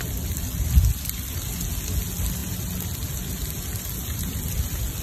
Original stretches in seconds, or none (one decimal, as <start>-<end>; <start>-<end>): 0.0-5.0